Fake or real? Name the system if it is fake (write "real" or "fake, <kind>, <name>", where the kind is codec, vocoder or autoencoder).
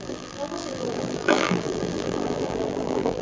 fake, vocoder, BigVGAN v2